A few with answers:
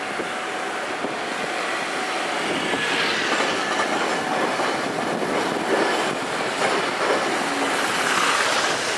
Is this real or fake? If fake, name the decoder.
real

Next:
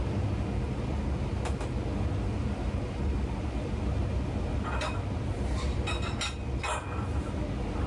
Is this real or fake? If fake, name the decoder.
real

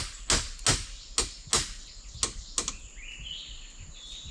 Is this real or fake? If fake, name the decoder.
real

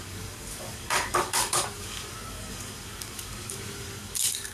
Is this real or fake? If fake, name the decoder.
fake, codec, DAC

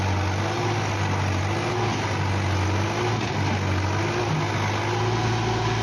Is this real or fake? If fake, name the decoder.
real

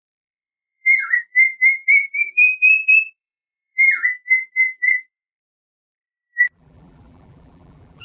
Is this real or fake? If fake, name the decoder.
fake, vocoder, BigVGAN v2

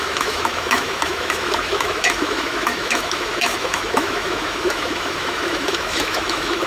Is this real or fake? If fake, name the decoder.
fake, autoencoder, DAC-VAE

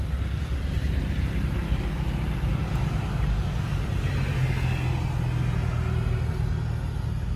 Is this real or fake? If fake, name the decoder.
real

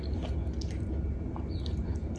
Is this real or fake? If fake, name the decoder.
real